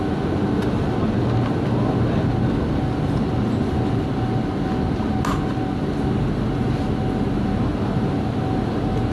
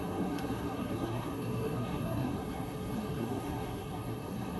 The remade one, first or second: second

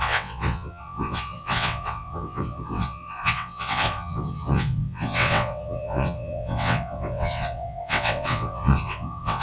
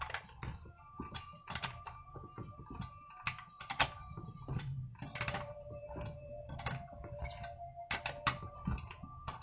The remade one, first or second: first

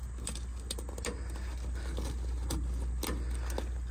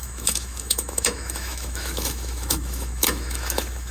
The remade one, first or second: second